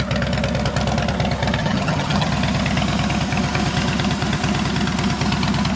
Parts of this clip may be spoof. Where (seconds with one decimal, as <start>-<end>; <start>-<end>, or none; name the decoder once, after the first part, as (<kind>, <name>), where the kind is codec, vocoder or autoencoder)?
1.6-2.3 (vocoder, HiFi-GAN)